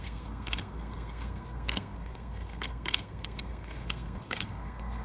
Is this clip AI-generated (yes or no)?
yes